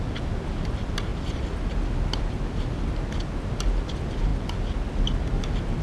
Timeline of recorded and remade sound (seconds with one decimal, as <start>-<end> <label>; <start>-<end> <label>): 0.0-5.8 recorded